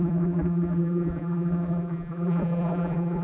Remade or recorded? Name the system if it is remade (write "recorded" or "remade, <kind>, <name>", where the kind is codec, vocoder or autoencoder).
remade, vocoder, BigVGAN v2